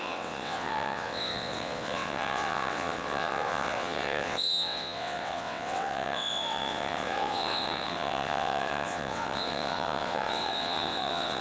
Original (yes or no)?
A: no